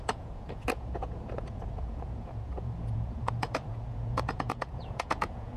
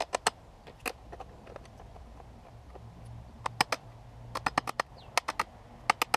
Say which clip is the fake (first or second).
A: first